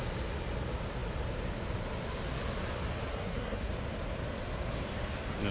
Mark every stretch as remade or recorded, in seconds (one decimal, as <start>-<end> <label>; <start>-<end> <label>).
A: 0.0-3.1 recorded; 3.1-3.7 remade; 3.7-5.5 recorded

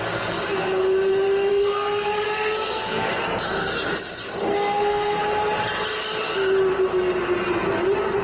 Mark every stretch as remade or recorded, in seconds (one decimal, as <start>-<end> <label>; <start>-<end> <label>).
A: 0.0-1.5 recorded; 1.5-3.1 remade; 3.1-4.5 recorded; 4.5-5.2 remade; 5.2-8.2 recorded

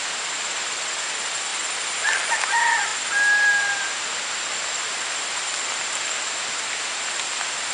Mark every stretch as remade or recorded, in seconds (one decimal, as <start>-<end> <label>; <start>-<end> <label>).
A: 0.0-7.7 recorded

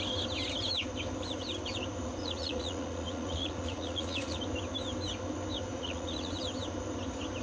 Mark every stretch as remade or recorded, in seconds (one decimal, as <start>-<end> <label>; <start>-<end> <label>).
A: 0.0-2.2 recorded; 2.2-4.4 remade; 4.4-5.7 recorded; 5.7-6.4 remade; 6.4-7.4 recorded

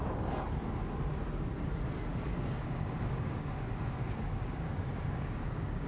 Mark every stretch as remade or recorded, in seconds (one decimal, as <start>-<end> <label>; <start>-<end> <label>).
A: 0.0-2.1 recorded; 2.1-5.9 remade

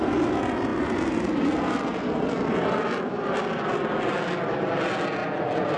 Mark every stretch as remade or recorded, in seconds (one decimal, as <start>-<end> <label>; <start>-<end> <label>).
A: 0.0-5.8 recorded